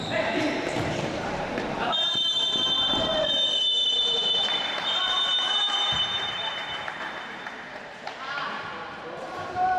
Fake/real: fake